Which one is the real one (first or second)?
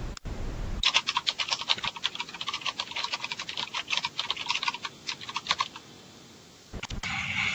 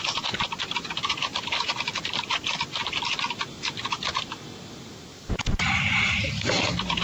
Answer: first